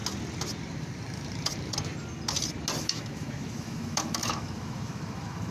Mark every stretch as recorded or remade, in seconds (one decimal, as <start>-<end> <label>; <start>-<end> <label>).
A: 0.0-2.8 recorded; 2.8-5.5 remade